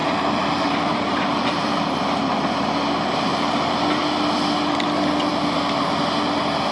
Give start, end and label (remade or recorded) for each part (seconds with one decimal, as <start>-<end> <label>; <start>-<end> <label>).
0.0-2.0 remade; 2.0-3.3 recorded; 3.3-3.8 remade; 3.8-6.7 recorded